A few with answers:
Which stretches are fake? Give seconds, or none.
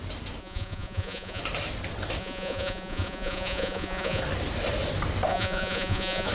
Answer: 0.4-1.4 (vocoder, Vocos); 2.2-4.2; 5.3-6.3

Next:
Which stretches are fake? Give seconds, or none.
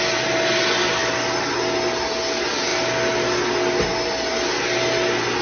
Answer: none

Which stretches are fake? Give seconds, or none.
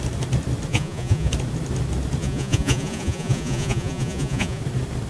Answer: 0.7-1.3 (vocoder, Vocos); 2.2-4.6